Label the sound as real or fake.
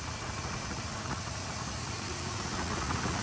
fake